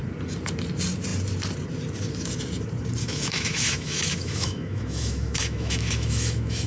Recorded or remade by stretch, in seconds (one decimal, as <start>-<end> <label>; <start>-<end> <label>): 0.0-3.0 recorded; 3.0-6.7 remade